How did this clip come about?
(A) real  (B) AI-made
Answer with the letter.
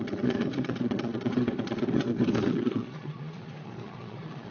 B